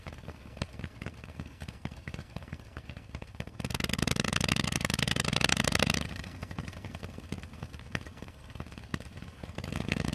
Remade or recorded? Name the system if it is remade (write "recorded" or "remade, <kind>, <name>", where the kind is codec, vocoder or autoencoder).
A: remade, codec, SNAC